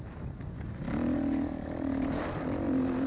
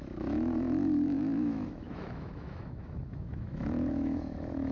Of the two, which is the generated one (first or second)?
second